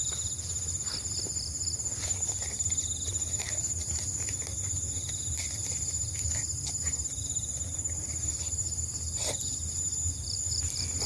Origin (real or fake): real